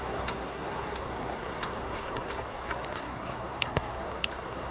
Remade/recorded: remade